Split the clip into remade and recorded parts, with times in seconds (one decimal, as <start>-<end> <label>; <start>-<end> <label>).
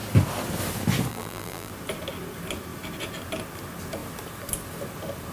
0.0-1.1 recorded; 1.1-1.7 remade; 1.7-5.3 recorded